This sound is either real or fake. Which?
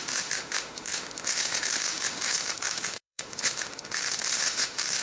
fake